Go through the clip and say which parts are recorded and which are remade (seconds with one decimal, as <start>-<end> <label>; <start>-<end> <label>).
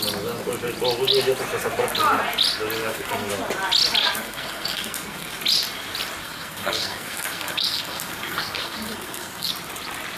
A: 0.0-2.8 recorded; 2.8-3.3 remade; 3.3-4.0 recorded; 4.0-5.4 remade; 5.4-6.2 recorded; 6.2-9.5 remade; 9.5-10.2 recorded